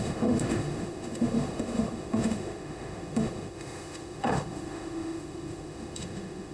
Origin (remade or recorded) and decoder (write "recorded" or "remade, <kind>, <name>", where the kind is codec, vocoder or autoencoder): remade, autoencoder, DAC-VAE